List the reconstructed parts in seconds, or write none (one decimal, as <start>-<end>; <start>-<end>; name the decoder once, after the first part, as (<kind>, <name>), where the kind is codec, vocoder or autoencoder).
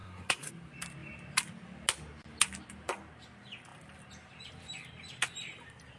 0.0-0.5 (codec, SNAC)